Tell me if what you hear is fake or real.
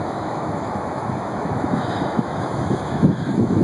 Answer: fake